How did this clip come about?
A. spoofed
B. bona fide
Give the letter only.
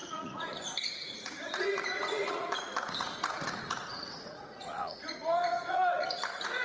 A